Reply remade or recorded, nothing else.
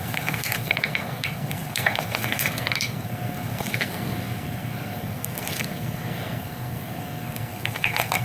remade